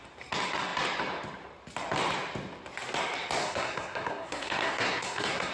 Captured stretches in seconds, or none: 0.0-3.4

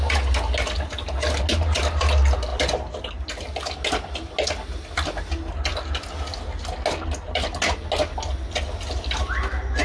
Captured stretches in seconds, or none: 0.0-2.5; 3.1-9.8

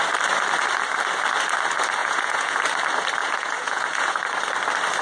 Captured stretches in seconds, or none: 0.0-2.0; 2.6-3.2; 4.2-5.0

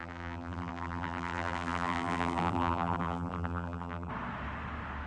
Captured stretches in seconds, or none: 4.1-5.1

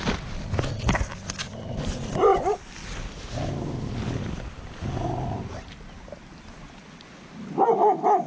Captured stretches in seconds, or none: 0.0-8.3

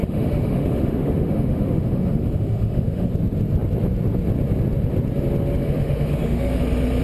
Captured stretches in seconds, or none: 3.1-5.6; 6.6-7.0

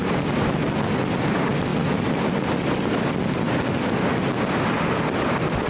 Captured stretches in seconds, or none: 0.0-5.7